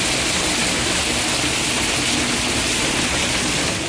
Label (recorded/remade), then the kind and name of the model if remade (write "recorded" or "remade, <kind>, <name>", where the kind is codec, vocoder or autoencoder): recorded